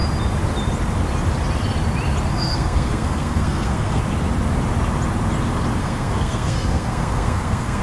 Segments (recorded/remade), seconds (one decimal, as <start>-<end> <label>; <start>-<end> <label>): 0.0-2.3 recorded; 2.3-4.0 remade; 4.0-5.8 recorded; 5.8-7.8 remade